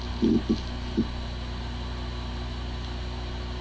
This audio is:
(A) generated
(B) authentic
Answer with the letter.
B